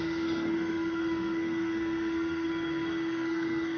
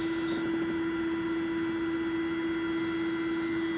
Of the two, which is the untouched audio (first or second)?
second